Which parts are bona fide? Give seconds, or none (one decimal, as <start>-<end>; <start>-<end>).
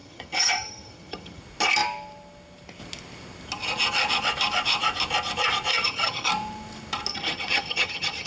1.4-5.7; 6.3-7.1